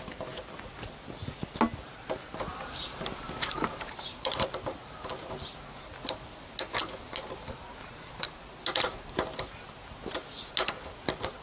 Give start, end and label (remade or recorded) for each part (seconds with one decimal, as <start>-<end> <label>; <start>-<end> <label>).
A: 0.0-2.5 recorded; 2.5-5.1 remade; 5.1-6.8 recorded; 6.8-8.4 remade; 8.4-11.4 recorded